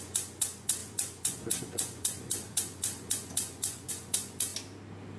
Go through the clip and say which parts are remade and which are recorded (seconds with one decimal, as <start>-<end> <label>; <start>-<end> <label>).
0.0-4.5 remade; 4.5-5.2 recorded